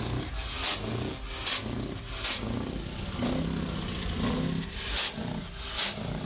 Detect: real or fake real